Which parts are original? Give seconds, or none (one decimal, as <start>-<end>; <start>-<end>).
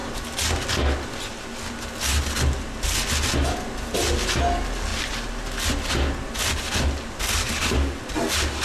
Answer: 0.0-7.4; 8.0-8.6